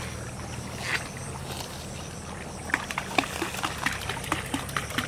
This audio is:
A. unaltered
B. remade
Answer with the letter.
A